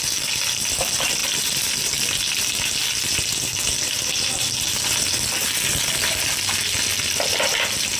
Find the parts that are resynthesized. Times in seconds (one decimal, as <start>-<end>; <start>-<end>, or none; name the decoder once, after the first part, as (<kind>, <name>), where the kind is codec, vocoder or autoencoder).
none